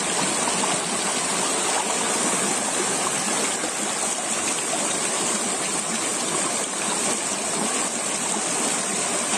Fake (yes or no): no